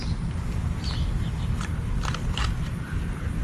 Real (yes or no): yes